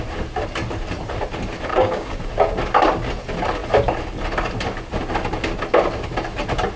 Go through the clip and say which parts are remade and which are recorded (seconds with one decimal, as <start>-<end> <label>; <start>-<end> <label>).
0.0-1.7 recorded; 1.7-2.2 remade; 2.2-6.8 recorded